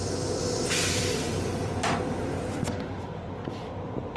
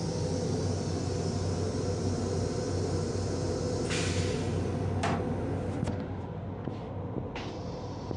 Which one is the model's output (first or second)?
first